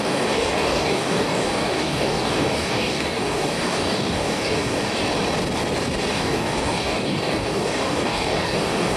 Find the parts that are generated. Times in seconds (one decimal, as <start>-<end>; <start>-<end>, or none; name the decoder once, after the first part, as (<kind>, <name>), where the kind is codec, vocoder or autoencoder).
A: 0.0-5.0 (codec, DAC); 6.1-9.0